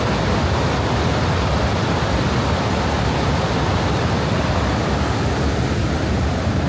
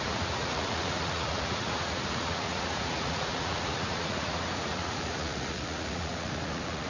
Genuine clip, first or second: first